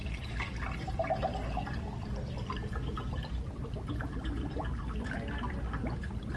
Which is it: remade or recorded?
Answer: recorded